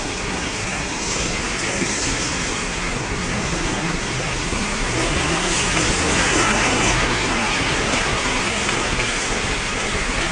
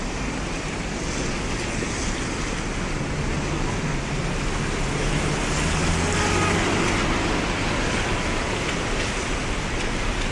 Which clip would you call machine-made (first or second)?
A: first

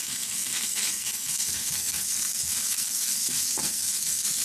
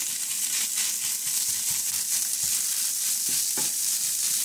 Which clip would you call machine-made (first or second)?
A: first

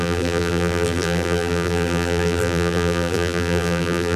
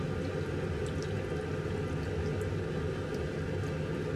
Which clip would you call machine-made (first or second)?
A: first